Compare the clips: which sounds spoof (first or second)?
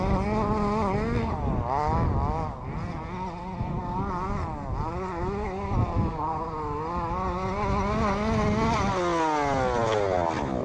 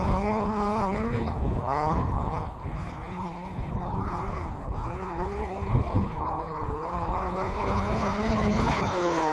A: second